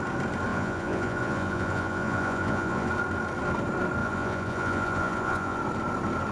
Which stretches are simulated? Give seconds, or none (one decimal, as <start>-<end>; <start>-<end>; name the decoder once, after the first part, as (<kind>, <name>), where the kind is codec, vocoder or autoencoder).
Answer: 0.5-2.9 (vocoder, Vocos); 4.0-5.6